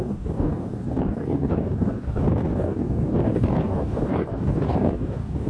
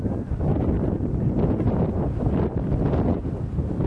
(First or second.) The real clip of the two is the second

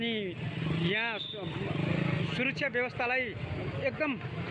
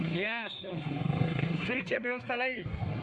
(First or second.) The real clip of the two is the first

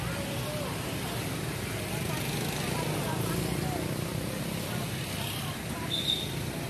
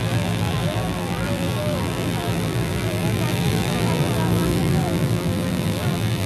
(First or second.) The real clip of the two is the first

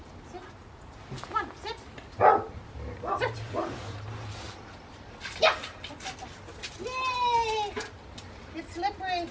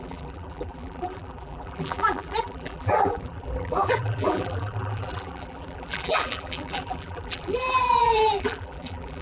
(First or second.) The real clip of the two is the first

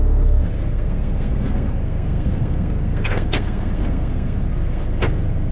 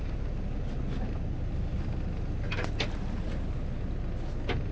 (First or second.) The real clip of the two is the second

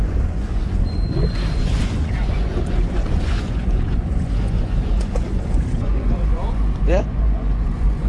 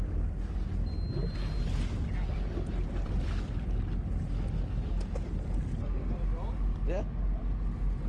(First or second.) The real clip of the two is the second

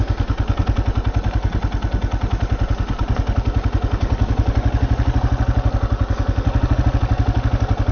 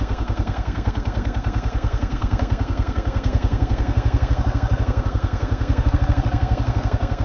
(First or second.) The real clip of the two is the first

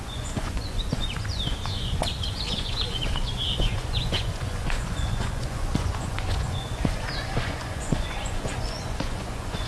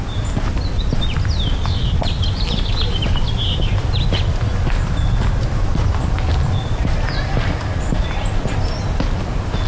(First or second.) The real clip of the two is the second